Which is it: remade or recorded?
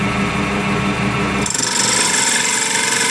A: recorded